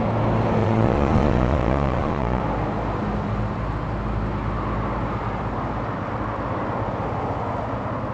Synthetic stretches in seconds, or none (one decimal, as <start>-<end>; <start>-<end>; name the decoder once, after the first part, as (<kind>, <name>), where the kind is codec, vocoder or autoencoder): 0.6-2.4 (vocoder, Vocos)